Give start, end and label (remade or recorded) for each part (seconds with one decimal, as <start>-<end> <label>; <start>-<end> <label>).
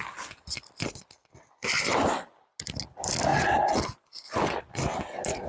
0.0-5.5 recorded